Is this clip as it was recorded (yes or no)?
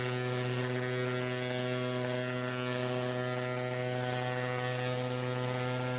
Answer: yes